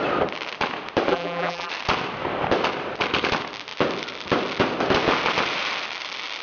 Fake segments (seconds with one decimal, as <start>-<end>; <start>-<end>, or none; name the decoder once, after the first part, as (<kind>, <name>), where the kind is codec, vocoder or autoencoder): 1.1-1.7 (vocoder, BigVGAN v2)